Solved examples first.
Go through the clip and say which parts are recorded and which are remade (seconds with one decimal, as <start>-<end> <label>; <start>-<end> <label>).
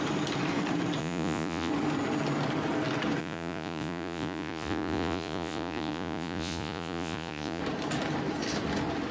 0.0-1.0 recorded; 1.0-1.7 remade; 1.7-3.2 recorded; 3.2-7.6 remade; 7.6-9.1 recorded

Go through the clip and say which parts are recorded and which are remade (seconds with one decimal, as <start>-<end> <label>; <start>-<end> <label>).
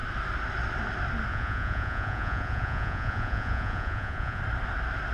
0.0-1.3 recorded; 1.3-4.4 remade; 4.4-5.1 recorded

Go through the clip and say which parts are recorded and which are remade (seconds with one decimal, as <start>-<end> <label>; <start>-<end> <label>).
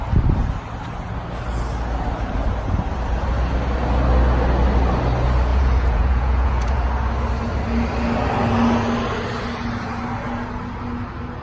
0.0-5.5 recorded; 5.5-6.9 remade; 6.9-11.4 recorded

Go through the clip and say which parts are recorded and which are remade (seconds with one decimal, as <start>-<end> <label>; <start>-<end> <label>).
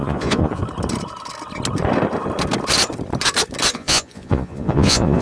0.0-0.6 remade; 0.6-3.7 recorded; 3.7-5.2 remade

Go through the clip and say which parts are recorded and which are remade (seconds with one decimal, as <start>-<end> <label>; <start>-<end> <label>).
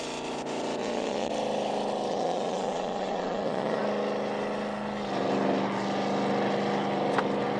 0.0-0.8 recorded; 0.8-1.3 remade; 1.3-2.1 recorded; 2.1-3.8 remade; 3.8-7.6 recorded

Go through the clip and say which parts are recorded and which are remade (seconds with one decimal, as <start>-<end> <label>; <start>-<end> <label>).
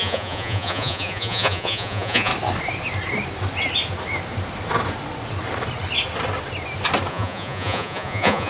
0.0-2.3 remade; 2.3-7.1 recorded; 7.1-8.5 remade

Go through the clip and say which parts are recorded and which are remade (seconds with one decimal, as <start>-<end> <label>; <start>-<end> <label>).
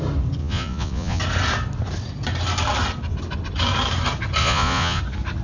0.0-0.4 recorded; 0.4-1.2 remade; 1.2-4.4 recorded; 4.4-5.0 remade; 5.0-5.4 recorded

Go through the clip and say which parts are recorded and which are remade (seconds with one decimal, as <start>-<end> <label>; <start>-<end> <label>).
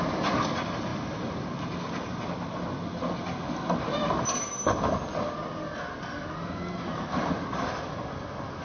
0.0-8.6 recorded